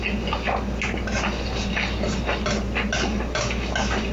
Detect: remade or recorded recorded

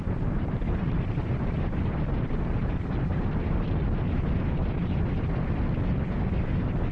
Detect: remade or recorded recorded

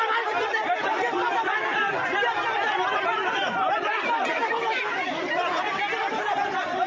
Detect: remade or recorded remade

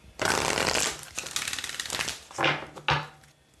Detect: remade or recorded recorded